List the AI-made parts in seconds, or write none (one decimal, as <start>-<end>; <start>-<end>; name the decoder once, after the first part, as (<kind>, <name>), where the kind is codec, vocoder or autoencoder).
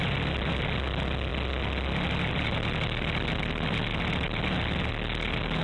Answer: none